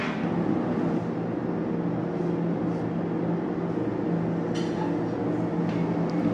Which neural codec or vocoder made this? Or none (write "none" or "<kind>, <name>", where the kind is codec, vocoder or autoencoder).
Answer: none